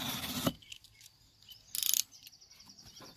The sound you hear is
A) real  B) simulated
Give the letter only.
A